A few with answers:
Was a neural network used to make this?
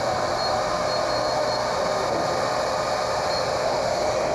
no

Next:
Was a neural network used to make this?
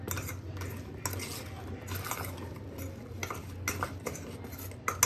no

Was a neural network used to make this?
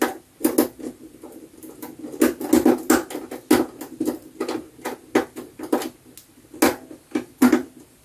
no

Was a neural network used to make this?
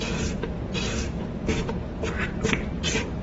yes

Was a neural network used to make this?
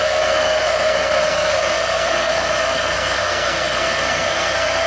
yes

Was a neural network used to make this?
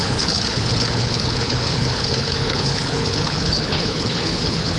yes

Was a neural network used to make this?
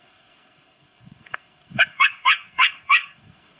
yes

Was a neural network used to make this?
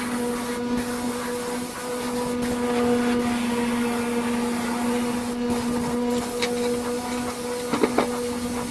no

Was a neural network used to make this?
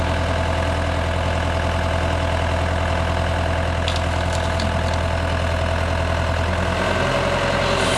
no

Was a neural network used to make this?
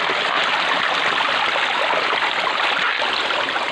no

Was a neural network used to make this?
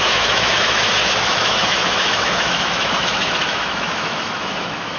yes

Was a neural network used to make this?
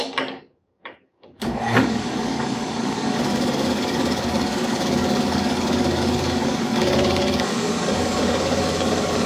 yes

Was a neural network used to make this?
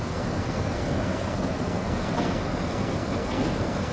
yes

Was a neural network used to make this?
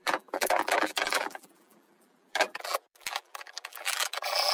yes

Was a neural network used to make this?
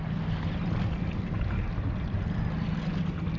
no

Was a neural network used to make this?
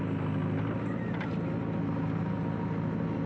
no